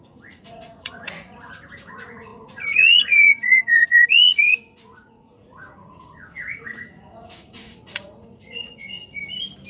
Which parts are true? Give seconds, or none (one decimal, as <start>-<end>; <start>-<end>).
9.2-9.7